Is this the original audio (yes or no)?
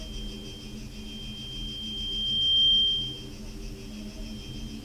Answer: yes